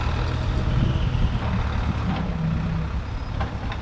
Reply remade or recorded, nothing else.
recorded